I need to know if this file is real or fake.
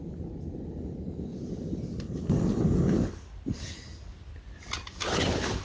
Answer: real